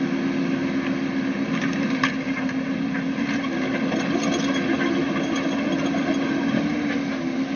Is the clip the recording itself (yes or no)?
yes